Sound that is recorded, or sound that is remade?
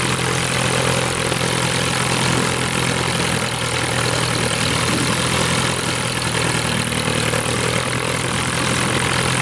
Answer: recorded